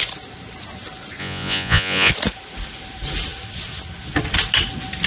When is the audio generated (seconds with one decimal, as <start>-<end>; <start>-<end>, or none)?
1.2-2.1